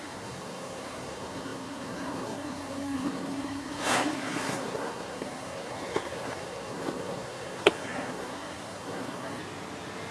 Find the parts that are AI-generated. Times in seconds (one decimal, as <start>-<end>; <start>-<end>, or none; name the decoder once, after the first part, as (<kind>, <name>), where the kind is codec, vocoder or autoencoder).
0.0-9.4 (codec, SNAC)